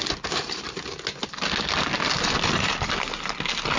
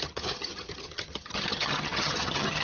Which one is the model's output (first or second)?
second